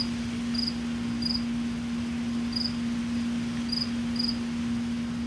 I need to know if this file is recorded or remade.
recorded